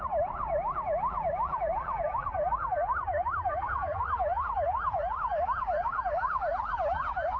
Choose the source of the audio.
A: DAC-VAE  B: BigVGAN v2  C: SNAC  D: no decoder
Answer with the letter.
B